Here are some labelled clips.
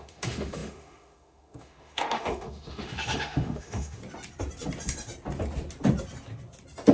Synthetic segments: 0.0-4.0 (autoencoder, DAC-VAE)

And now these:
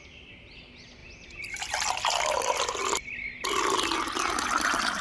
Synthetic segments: none